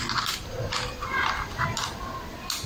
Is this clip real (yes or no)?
yes